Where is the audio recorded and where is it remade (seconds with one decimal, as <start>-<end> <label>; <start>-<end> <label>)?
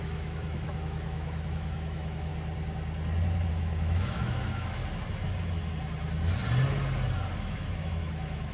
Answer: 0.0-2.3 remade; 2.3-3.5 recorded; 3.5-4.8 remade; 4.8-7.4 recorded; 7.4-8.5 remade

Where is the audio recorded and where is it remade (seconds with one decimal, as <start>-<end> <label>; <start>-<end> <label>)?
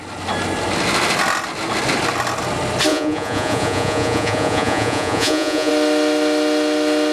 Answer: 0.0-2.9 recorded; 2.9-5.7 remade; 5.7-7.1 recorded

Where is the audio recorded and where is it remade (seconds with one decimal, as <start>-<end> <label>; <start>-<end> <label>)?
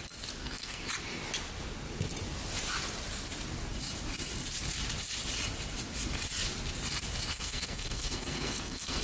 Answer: 0.0-0.4 recorded; 0.4-0.9 remade; 0.9-7.3 recorded; 7.3-9.0 remade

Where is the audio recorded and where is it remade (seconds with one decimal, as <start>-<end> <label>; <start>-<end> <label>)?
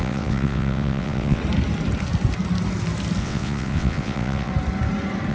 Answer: 0.0-1.4 remade; 1.4-3.2 recorded; 3.2-4.5 remade; 4.5-5.3 recorded